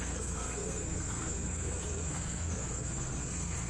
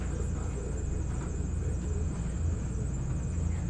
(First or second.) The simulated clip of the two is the first